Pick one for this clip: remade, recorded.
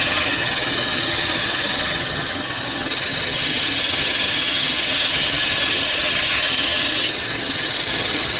remade